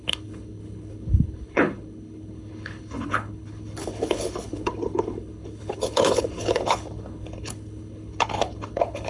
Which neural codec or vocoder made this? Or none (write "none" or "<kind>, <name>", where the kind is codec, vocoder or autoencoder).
codec, HILCodec